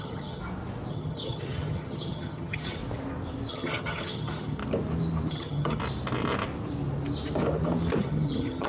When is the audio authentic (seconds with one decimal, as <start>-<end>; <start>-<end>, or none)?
0.4-0.9; 2.8-3.5; 4.6-5.3; 5.8-8.0